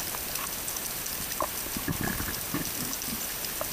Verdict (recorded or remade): recorded